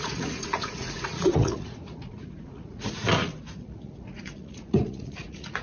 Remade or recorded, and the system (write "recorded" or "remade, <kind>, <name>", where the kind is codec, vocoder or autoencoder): remade, vocoder, Vocos